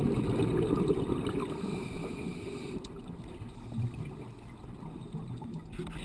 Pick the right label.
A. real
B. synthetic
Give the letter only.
A